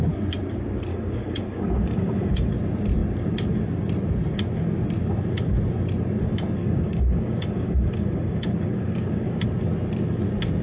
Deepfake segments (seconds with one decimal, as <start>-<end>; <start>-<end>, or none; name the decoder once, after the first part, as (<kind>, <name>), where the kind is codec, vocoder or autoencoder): 0.9-2.5 (codec, DAC); 6.6-9.4